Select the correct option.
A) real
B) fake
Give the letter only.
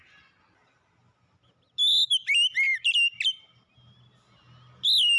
A